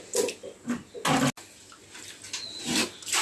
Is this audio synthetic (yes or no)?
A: no